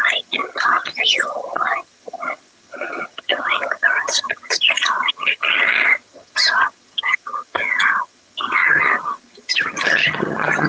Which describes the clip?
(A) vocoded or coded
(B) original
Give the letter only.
A